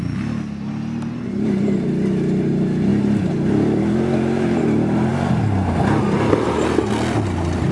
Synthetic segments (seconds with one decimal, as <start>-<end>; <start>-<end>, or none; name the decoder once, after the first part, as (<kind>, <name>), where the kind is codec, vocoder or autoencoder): 2.9-4.4 (vocoder, BigVGAN v2)